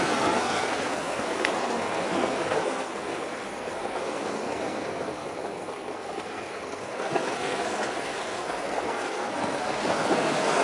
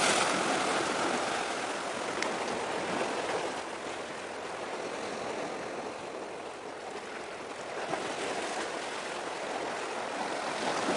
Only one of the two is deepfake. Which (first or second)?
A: first